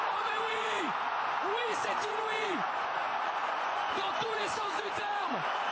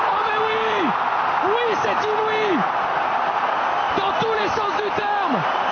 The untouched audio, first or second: second